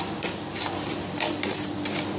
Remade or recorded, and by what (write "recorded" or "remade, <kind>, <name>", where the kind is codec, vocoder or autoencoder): recorded